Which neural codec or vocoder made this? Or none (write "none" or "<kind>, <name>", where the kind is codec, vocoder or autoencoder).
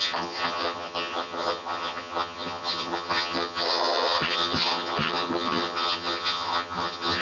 vocoder, HiFi-GAN